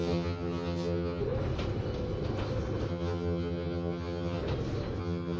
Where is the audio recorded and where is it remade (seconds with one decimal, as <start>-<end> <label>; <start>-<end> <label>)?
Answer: 0.0-1.2 remade; 1.2-2.9 recorded; 2.9-4.4 remade; 4.4-5.0 recorded; 5.0-5.4 remade

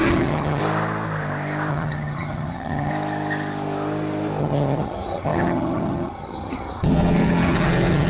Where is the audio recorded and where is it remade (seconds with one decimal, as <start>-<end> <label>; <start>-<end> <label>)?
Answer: 0.0-0.6 remade; 0.6-1.7 recorded; 1.7-2.9 remade; 2.9-4.4 recorded; 4.4-8.1 remade

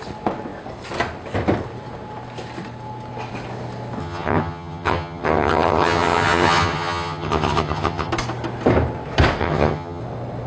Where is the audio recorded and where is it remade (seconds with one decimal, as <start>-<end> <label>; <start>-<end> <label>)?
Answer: 0.0-4.0 recorded; 4.0-8.1 remade; 8.1-9.4 recorded; 9.4-10.0 remade; 10.0-10.5 recorded

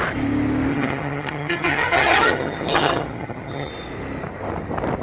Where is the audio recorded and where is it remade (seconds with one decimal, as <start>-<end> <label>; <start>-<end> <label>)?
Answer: 0.0-0.7 recorded; 0.7-3.7 remade; 3.7-5.0 recorded

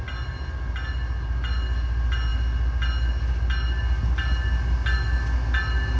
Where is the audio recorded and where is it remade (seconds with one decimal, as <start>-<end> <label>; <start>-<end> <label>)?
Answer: 0.0-6.0 recorded

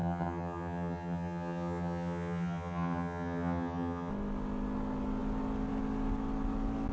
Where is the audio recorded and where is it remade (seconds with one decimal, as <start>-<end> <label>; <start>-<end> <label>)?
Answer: 0.0-4.1 remade; 4.1-6.9 recorded